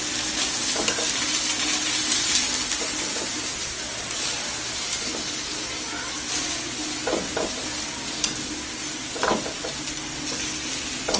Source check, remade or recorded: recorded